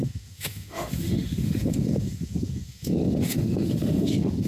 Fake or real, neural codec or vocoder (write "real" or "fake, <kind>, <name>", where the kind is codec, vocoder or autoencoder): fake, autoencoder, DAC-VAE